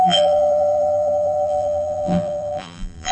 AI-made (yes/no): yes